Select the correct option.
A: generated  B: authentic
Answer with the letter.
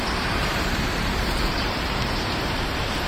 A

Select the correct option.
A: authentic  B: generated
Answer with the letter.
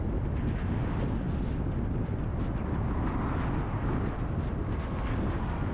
A